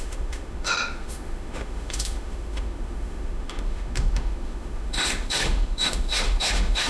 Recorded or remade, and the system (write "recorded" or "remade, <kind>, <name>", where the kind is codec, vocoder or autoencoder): remade, autoencoder, DAC-VAE